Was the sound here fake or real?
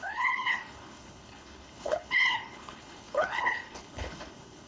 fake